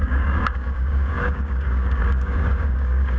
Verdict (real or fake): fake